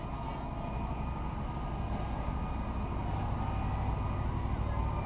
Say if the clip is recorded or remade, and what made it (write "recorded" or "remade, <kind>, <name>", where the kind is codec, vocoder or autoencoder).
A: recorded